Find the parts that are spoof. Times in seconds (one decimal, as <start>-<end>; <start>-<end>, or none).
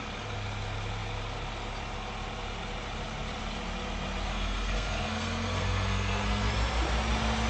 4.3-6.5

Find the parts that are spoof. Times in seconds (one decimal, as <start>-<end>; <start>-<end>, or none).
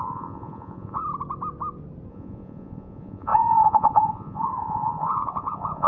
0.0-1.0; 2.1-5.9